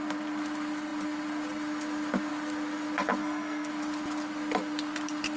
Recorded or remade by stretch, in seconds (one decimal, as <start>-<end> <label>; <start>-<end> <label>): 0.0-3.2 recorded; 3.2-3.7 remade; 3.7-5.4 recorded